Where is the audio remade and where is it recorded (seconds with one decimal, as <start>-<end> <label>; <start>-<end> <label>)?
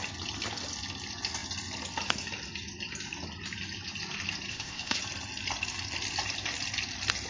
0.0-4.5 recorded; 4.5-5.0 remade; 5.0-7.3 recorded